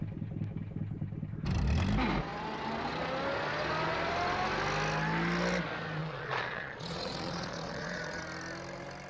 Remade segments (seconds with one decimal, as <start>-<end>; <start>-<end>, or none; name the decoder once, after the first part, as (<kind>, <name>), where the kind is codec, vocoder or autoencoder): 6.0-8.2 (vocoder, Vocos)